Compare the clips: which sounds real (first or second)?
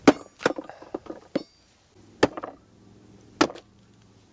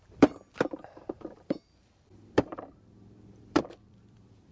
first